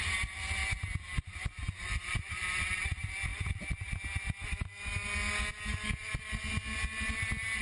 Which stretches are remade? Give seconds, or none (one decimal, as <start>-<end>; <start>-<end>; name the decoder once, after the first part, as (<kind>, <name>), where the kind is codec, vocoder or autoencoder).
none